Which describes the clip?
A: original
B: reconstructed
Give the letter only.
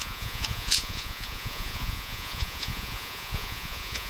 B